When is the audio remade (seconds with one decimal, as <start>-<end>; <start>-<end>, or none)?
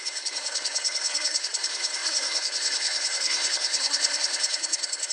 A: 0.0-5.1